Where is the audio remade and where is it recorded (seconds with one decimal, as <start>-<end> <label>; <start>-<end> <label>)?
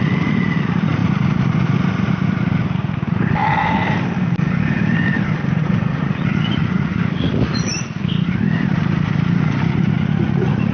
0.0-1.0 remade; 1.0-5.6 recorded; 5.6-7.7 remade; 7.7-9.7 recorded; 9.7-10.7 remade